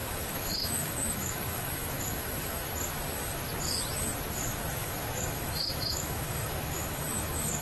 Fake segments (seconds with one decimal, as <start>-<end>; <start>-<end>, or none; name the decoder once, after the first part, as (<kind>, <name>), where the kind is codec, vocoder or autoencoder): 0.0-2.7 (autoencoder, DAC-VAE); 4.5-7.6